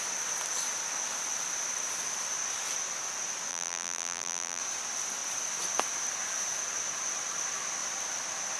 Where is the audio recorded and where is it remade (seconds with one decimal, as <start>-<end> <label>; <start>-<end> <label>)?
0.0-3.5 recorded; 3.5-4.6 remade; 4.6-8.6 recorded